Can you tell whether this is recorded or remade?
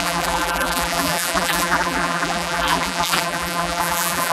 remade